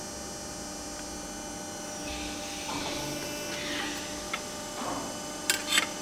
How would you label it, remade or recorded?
recorded